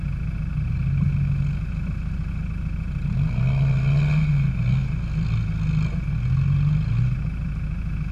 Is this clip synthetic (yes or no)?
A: no